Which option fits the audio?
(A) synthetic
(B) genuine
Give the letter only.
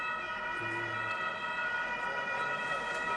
B